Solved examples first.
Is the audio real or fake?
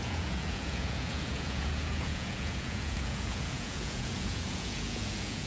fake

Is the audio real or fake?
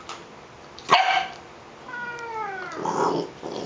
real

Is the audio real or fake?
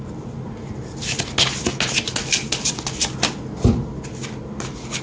real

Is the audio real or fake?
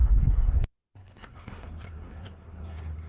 fake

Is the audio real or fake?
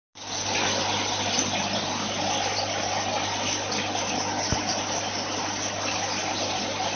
real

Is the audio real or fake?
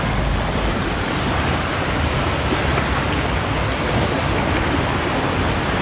real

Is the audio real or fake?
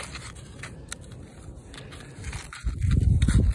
real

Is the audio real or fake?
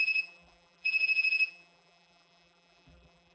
fake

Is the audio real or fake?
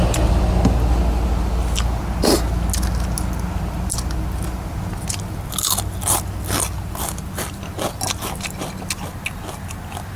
real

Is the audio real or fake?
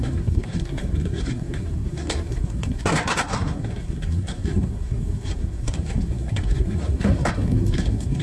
fake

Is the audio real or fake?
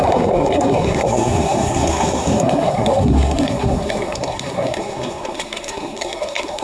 fake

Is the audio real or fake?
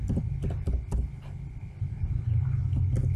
real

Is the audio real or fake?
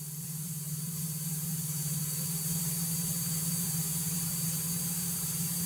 fake